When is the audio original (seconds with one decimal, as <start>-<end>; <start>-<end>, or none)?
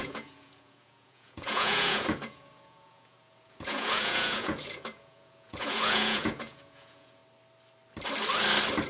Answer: 7.2-8.9